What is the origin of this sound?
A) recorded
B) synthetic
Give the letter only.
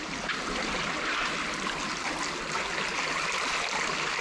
A